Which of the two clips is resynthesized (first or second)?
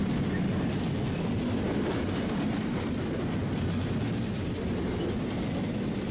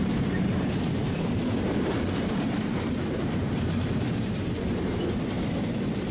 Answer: second